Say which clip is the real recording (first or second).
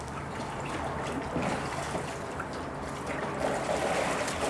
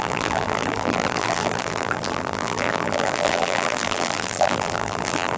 first